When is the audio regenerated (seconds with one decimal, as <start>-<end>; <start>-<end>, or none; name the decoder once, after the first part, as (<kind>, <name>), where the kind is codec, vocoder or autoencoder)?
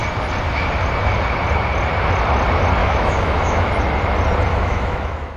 2.8-3.7 (autoencoder, DAC-VAE); 4.5-5.4